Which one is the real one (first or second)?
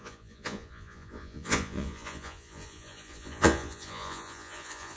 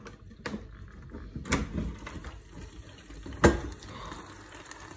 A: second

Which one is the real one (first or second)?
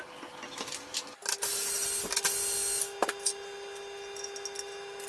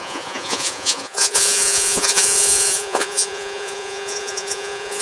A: first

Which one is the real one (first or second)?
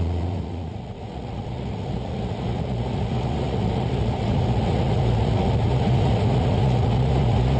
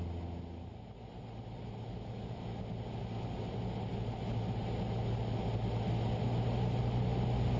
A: second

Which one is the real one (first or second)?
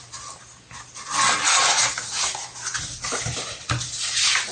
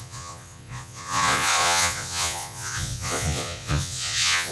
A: first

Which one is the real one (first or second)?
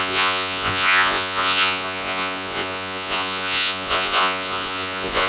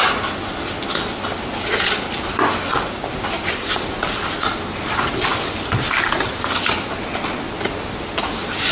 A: second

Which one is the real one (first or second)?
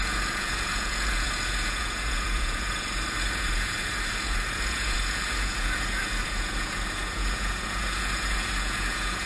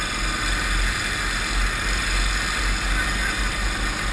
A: second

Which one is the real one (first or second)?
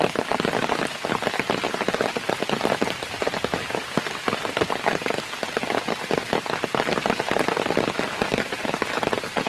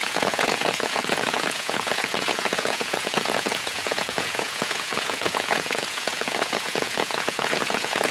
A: first